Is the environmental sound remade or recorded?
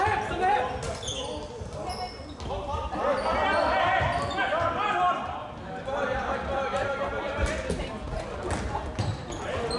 recorded